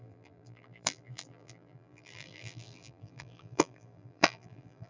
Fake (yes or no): yes